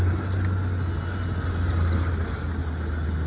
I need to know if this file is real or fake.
real